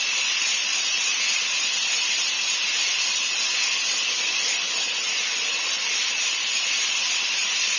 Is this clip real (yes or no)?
yes